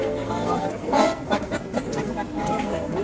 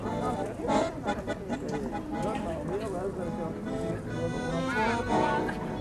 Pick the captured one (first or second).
second